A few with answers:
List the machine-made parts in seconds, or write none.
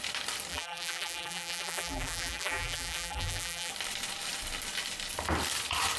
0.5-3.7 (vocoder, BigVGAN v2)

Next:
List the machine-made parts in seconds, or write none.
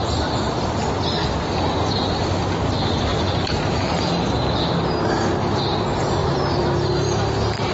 1.2-2.4 (vocoder, BigVGAN v2); 3.1-4.3; 6.2-6.9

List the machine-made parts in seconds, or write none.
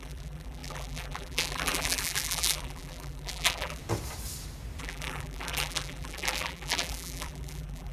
0.0-3.8 (vocoder, BigVGAN v2); 4.8-7.9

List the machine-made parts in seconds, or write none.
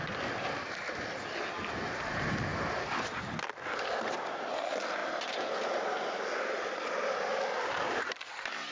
none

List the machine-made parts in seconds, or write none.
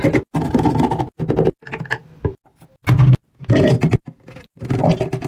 none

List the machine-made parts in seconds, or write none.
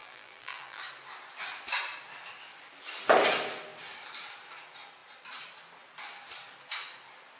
0.0-0.8 (vocoder, BigVGAN v2)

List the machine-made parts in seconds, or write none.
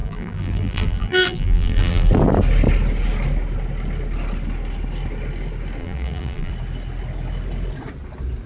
0.0-2.1 (vocoder, BigVGAN v2); 5.8-6.5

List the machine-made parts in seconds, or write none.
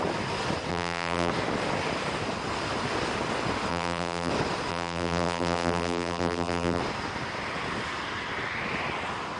0.7-1.3 (vocoder, BigVGAN v2); 3.7-4.3; 4.7-6.8